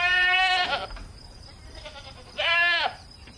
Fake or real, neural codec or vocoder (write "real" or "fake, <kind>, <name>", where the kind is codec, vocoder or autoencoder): fake, vocoder, BigVGAN v2